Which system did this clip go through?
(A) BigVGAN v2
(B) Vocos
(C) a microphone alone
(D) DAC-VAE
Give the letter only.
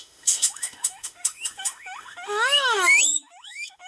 D